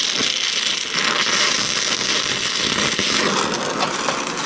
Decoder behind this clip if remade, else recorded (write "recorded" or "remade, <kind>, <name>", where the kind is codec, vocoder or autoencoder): recorded